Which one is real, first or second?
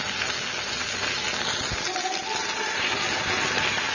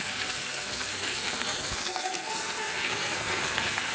first